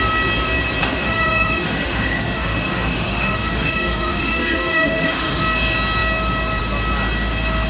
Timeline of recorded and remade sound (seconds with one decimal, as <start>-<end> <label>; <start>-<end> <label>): 0.0-0.8 recorded; 0.8-5.4 remade; 5.4-7.7 recorded